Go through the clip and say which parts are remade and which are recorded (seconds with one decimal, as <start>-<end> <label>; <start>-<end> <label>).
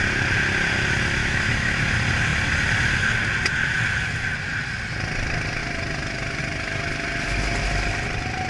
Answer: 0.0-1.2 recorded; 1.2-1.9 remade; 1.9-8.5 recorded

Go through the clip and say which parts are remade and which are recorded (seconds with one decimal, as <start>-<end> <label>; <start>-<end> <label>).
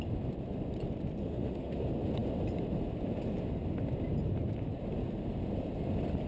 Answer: 0.0-1.2 recorded; 1.2-1.8 remade; 1.8-6.3 recorded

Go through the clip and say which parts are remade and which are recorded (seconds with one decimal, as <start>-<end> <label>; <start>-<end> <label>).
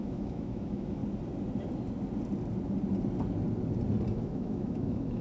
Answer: 0.0-1.0 remade; 1.0-4.1 recorded; 4.1-5.2 remade